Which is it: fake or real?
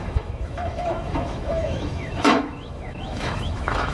fake